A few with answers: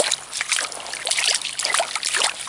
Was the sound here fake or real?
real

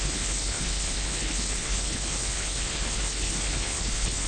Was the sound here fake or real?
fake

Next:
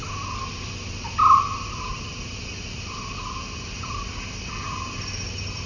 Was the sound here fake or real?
real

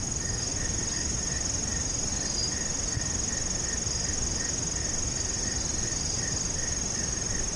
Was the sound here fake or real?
real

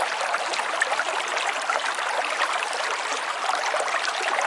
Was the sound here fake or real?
real